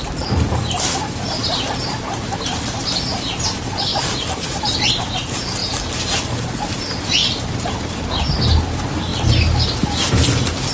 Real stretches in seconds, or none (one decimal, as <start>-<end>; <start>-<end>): 5.6-6.2; 7.2-8.4